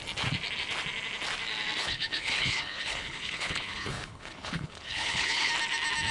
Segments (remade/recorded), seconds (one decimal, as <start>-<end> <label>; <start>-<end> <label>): 0.0-1.8 recorded; 1.8-5.5 remade; 5.5-6.1 recorded